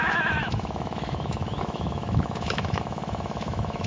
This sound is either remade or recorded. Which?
remade